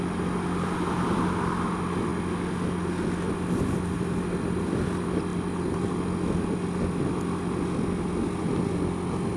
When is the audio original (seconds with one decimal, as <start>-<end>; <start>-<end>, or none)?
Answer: 0.0-9.4